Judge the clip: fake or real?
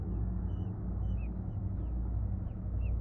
fake